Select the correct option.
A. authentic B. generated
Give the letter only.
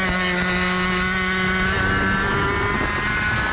A